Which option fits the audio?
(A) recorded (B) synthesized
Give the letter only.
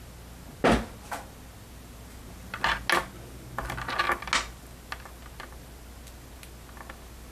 A